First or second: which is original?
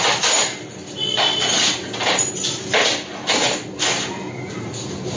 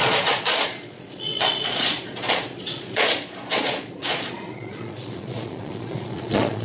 first